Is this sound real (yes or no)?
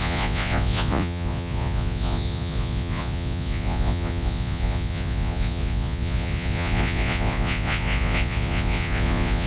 no